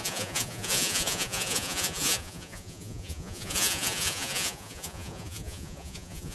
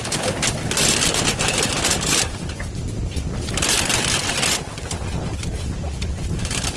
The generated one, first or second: first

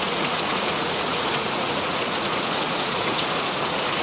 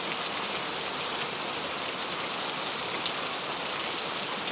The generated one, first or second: first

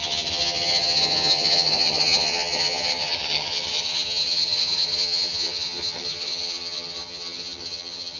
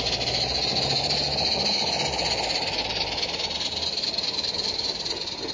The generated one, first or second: first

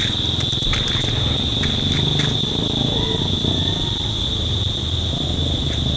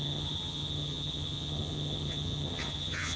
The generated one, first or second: second